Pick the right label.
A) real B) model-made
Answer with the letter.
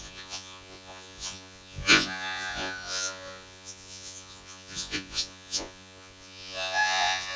B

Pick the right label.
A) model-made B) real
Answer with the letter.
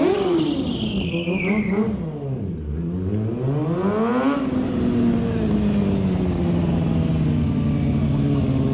B